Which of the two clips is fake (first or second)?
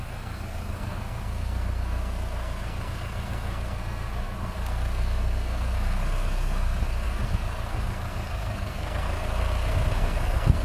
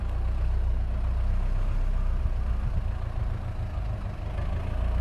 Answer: first